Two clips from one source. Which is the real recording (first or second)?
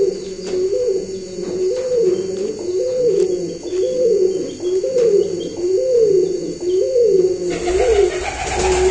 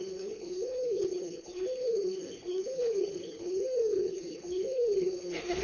first